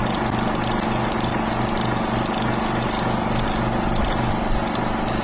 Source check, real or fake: real